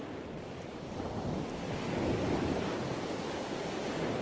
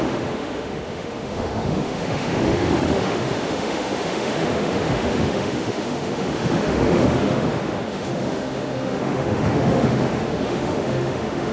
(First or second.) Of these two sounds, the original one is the first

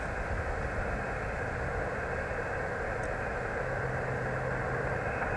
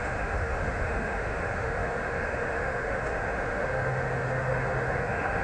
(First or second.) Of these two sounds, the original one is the first